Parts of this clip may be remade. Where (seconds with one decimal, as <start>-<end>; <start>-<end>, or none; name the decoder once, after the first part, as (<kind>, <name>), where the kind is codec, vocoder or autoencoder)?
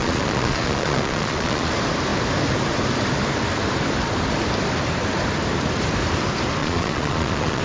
0.0-1.7 (vocoder, Vocos); 6.6-7.6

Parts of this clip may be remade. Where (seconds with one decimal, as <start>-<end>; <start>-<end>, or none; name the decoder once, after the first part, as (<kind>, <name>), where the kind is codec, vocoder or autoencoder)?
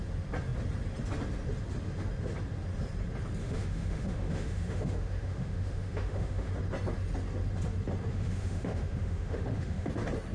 3.4-6.5 (autoencoder, DAC-VAE); 8.1-9.9